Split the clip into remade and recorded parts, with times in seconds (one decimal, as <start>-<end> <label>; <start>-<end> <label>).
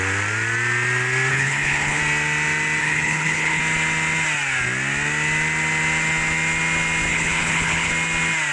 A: 0.0-1.3 recorded; 1.3-2.0 remade; 2.0-2.8 recorded; 2.8-3.6 remade; 3.6-7.1 recorded; 7.1-7.9 remade; 7.9-8.5 recorded